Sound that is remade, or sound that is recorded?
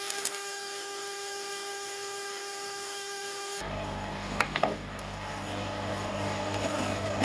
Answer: remade